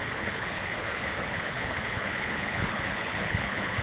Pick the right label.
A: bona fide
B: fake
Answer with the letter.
B